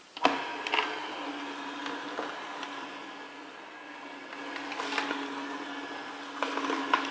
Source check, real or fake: real